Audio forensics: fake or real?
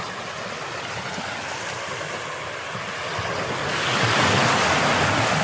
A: real